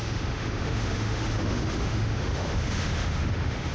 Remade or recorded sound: remade